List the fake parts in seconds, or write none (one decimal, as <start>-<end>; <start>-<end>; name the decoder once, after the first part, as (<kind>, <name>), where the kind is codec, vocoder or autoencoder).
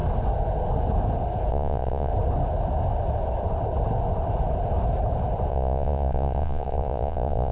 1.5-2.1 (vocoder, Vocos); 5.5-7.5